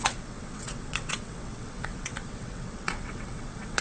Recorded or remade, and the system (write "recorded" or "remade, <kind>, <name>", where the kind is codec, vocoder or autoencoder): remade, vocoder, WaveNeXt